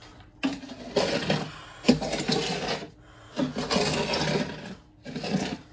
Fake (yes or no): no